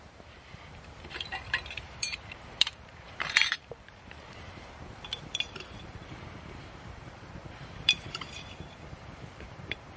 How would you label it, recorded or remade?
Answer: remade